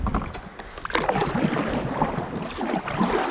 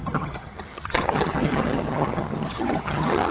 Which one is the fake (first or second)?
second